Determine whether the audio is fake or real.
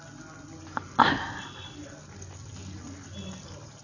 real